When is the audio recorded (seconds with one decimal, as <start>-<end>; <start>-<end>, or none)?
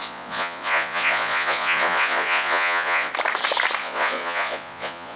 3.1-3.8